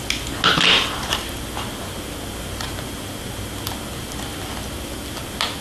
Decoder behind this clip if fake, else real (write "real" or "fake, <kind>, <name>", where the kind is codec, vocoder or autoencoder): real